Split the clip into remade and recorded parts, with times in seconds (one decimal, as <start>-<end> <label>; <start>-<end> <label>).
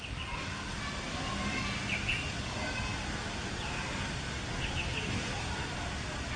0.0-6.4 recorded